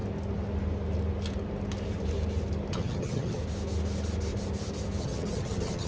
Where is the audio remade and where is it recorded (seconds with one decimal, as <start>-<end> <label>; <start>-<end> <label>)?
0.0-2.7 recorded; 2.7-3.4 remade; 3.4-5.0 recorded; 5.0-5.9 remade